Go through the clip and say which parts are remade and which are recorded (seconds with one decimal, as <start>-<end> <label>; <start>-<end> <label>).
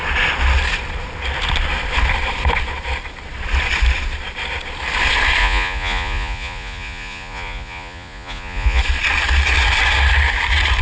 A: 0.0-5.4 recorded; 5.4-8.8 remade; 8.8-10.8 recorded